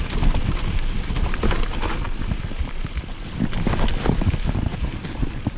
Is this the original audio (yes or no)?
yes